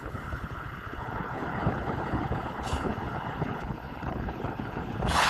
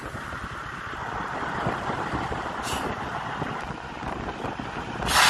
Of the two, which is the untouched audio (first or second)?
second